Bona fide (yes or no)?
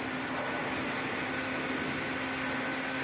yes